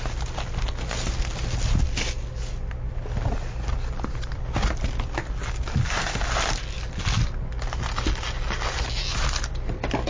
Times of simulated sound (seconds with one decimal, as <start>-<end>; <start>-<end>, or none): 9.0-9.5